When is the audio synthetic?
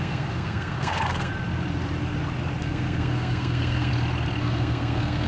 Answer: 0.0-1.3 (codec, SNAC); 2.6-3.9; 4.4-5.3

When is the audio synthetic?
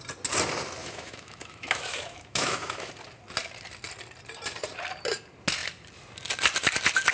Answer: 0.8-2.9 (autoencoder, DAC-VAE)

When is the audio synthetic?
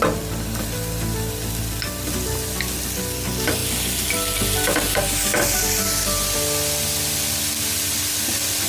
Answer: none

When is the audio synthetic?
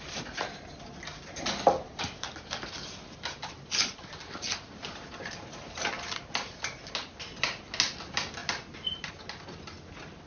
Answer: none